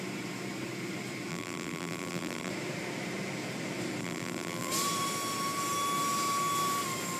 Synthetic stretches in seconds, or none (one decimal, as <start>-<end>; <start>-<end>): 1.3-2.5; 4.0-4.7